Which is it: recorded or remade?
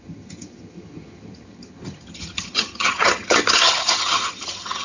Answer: remade